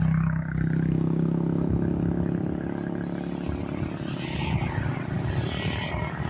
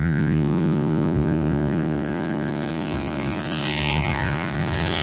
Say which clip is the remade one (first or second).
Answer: second